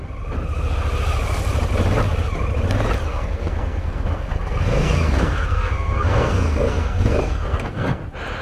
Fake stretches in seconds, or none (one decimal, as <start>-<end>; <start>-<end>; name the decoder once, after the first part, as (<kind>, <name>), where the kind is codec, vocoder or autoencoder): 3.1-8.0 (codec, SNAC)